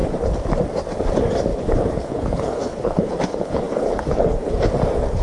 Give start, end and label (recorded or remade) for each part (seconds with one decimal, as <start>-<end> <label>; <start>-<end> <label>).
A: 0.0-1.5 recorded; 1.5-4.6 remade; 4.6-5.2 recorded